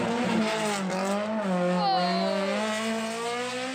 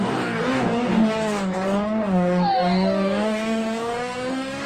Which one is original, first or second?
first